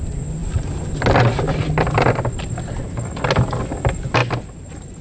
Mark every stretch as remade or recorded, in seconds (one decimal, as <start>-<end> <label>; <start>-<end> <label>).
0.0-5.0 recorded